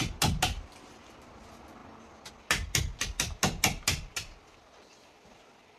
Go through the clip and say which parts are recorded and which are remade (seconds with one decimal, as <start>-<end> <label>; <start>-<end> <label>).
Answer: 0.0-5.8 recorded